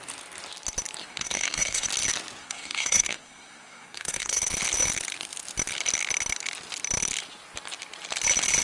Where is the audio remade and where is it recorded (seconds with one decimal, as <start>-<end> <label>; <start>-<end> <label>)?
0.0-1.0 recorded; 1.0-1.9 remade; 1.9-2.4 recorded; 2.4-4.4 remade; 4.4-8.6 recorded